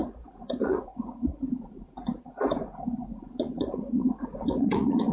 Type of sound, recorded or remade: remade